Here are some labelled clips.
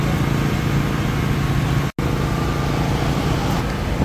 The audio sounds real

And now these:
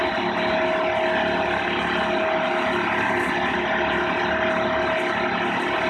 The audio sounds real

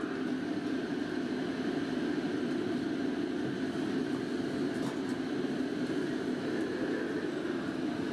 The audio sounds real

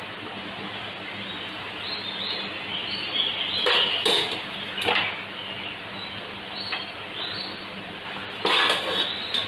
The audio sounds real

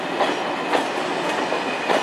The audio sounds real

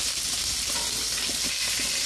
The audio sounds real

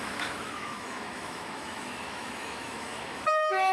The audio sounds fake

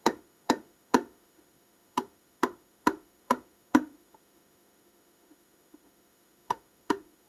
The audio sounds fake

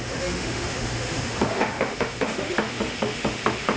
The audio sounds fake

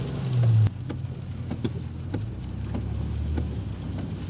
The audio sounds real